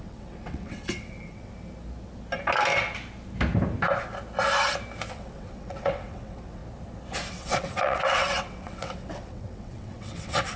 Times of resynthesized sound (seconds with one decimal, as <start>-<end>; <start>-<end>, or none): 0.0-1.5; 5.1-6.6; 7.3-10.6